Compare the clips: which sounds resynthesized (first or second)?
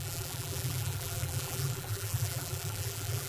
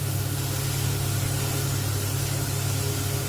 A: first